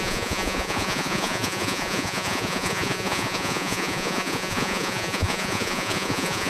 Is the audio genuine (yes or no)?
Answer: no